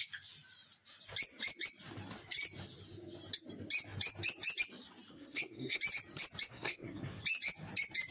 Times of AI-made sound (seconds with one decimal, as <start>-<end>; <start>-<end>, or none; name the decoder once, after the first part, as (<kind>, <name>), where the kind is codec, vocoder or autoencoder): 5.1-5.8 (codec, SNAC); 6.5-7.2